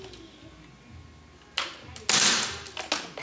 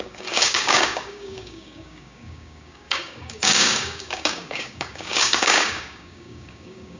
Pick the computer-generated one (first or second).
second